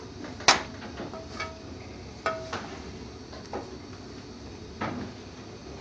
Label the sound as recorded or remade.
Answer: recorded